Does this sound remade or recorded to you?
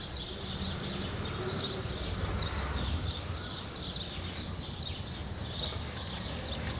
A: recorded